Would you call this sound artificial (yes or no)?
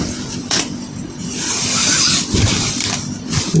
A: yes